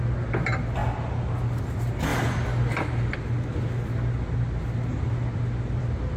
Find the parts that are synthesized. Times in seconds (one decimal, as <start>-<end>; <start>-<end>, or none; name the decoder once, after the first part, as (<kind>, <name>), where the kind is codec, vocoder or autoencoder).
none